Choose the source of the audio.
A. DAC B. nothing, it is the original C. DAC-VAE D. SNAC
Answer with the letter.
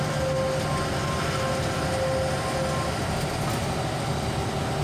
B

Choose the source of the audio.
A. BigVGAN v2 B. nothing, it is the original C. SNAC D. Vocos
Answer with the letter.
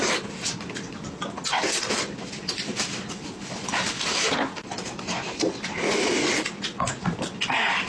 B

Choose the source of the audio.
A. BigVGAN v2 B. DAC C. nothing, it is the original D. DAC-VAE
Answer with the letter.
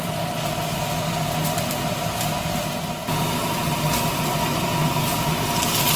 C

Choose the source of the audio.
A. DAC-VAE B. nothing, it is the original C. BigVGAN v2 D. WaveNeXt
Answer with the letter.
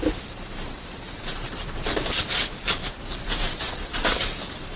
C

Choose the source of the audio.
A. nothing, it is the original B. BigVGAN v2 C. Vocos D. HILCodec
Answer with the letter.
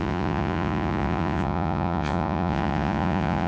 C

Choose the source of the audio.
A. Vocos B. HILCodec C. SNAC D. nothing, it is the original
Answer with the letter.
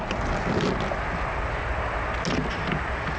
D